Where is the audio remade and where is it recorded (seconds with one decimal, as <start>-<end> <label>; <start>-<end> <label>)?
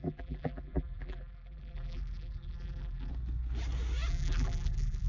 0.0-3.1 remade; 3.1-4.1 recorded; 4.1-5.1 remade